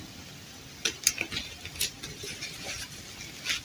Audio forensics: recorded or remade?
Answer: recorded